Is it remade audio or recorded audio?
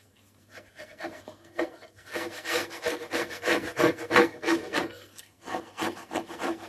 remade